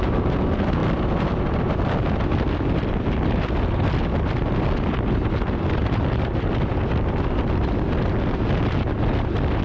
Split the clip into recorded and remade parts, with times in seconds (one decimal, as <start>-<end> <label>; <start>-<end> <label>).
0.0-9.6 recorded